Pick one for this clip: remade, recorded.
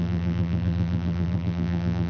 remade